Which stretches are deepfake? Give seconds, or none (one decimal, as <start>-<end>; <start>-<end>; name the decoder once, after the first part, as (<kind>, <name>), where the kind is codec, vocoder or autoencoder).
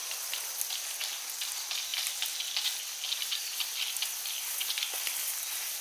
none